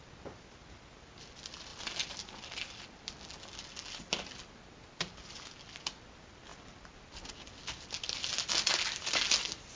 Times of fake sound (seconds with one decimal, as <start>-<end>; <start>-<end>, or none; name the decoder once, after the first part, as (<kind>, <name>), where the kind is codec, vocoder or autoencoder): none